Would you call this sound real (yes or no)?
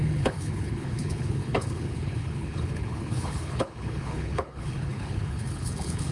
no